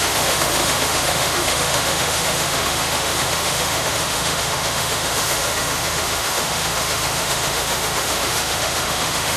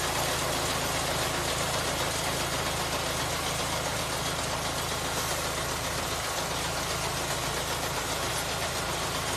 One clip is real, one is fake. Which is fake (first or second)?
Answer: first